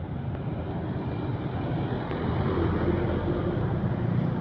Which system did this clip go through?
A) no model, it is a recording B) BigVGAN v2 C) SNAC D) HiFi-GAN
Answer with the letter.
A